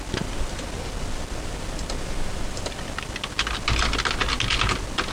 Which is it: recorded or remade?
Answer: recorded